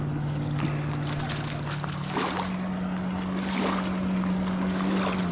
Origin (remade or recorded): recorded